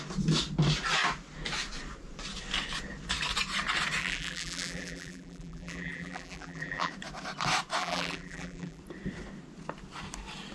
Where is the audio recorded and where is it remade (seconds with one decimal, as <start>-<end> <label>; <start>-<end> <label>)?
0.0-4.0 recorded; 4.0-6.9 remade; 6.9-7.8 recorded; 7.8-8.8 remade; 8.8-10.5 recorded